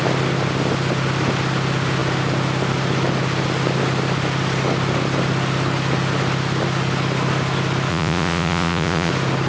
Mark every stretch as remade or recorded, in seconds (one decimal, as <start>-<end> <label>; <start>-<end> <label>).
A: 0.0-7.9 recorded; 7.9-9.1 remade; 9.1-9.5 recorded